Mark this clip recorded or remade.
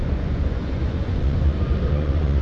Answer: remade